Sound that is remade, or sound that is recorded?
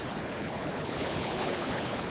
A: remade